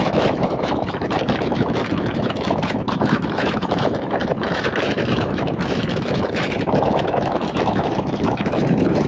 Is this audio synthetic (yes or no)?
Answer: yes